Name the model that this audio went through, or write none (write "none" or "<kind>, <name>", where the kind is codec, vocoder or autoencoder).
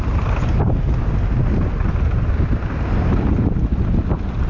none